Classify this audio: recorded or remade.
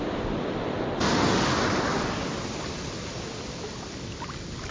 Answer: recorded